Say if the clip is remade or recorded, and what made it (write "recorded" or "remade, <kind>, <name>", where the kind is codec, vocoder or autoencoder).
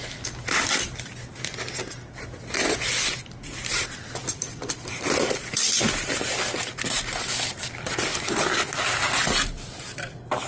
recorded